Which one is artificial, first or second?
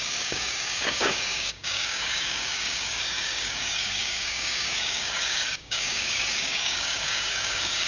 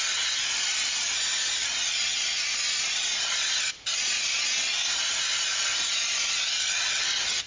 first